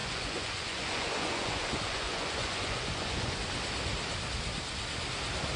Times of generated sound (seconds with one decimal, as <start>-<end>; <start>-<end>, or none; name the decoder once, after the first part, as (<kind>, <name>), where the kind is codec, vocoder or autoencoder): 0.0-3.4 (vocoder, Vocos)